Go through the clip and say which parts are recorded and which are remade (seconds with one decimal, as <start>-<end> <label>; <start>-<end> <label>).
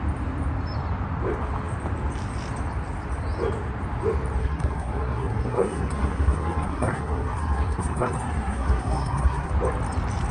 0.0-4.4 recorded; 4.4-9.5 remade; 9.5-10.3 recorded